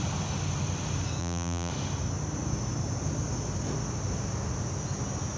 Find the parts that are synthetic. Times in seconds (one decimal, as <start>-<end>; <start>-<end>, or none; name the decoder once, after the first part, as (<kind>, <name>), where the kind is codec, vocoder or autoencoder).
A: 1.2-1.7 (vocoder, BigVGAN v2)